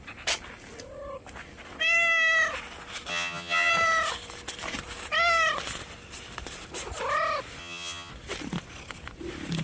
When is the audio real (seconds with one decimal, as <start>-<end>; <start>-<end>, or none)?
0.0-3.1; 3.7-7.6; 8.1-9.6